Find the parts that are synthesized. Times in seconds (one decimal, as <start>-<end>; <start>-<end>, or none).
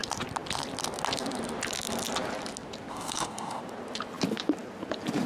2.9-3.6